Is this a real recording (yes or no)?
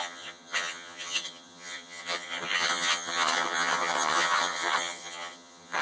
no